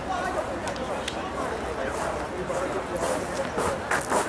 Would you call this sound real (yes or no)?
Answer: yes